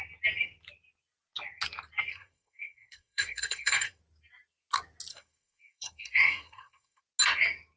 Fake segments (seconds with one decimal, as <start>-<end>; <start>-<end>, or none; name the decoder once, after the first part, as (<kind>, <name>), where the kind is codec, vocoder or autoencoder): 2.1-4.0 (codec, SNAC); 5.1-7.0